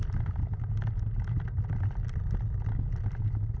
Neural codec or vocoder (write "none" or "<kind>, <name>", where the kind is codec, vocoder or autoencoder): none